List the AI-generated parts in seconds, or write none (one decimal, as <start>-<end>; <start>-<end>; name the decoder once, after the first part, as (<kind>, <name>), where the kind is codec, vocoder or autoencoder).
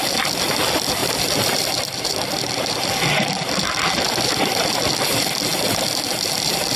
none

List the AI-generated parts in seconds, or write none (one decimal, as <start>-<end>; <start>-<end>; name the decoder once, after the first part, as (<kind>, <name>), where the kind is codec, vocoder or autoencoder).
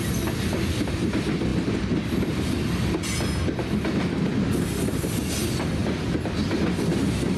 none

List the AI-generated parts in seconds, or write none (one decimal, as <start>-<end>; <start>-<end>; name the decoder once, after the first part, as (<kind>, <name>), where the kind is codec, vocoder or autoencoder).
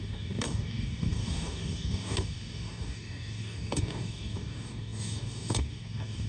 0.0-6.3 (codec, DAC)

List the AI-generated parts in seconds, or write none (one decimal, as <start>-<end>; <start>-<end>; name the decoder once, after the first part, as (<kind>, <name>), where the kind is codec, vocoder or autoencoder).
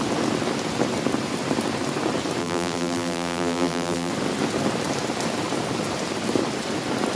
2.4-4.1 (vocoder, BigVGAN v2)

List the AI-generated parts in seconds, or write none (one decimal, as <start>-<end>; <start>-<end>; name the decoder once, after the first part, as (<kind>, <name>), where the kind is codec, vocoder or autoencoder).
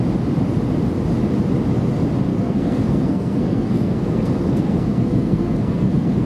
2.3-6.3 (codec, SNAC)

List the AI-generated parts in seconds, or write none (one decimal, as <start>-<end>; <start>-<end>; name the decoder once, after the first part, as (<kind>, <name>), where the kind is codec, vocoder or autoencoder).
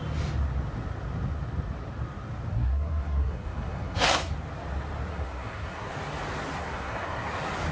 2.5-4.3 (codec, SNAC); 5.1-5.9; 6.6-7.3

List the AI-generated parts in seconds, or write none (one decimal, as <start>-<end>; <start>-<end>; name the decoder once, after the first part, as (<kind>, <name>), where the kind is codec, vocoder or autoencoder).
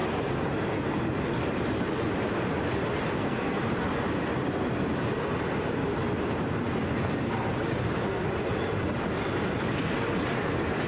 3.1-3.6 (codec, SNAC)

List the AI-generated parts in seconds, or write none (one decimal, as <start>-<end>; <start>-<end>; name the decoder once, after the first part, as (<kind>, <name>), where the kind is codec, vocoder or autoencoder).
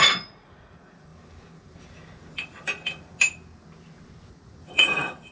0.0-1.1 (vocoder, Vocos); 4.3-5.3